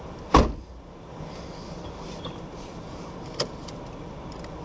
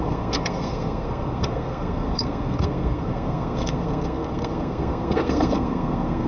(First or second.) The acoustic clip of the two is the first